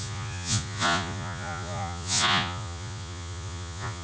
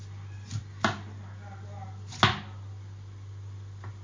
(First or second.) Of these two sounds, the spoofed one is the first